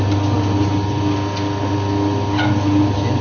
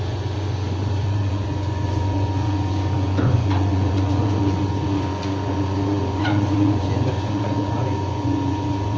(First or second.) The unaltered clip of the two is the first